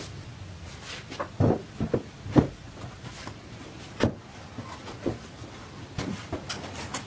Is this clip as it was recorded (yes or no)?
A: yes